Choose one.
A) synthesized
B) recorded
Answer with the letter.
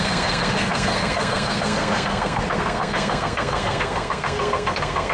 A